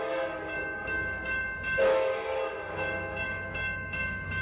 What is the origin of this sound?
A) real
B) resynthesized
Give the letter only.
B